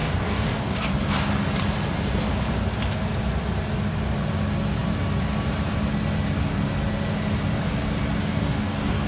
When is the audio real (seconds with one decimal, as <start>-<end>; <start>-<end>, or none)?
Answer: 0.9-8.2